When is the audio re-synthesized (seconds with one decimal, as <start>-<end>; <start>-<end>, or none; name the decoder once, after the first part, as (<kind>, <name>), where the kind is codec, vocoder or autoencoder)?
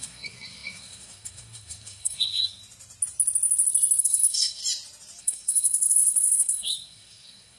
0.0-2.6 (codec, SNAC); 4.0-4.6; 5.2-7.6